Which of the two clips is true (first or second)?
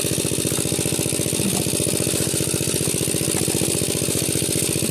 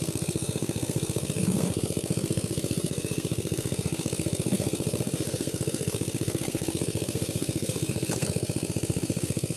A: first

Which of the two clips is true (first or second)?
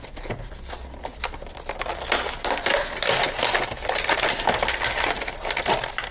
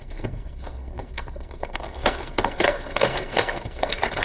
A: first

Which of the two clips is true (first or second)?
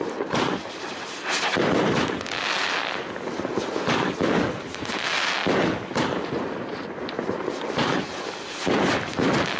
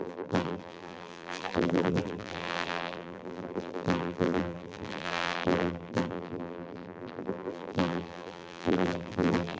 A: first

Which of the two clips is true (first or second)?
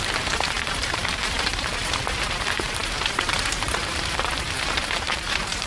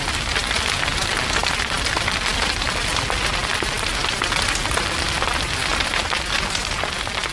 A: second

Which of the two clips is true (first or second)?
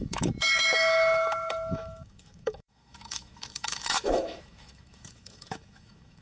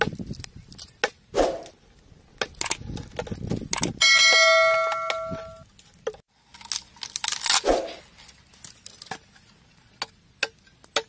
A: second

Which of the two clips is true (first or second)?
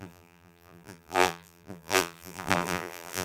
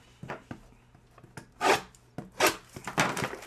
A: second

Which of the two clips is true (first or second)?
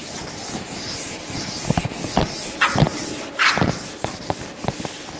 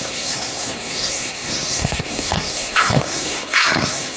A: first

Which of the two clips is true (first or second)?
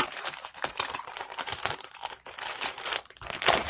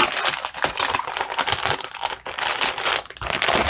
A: second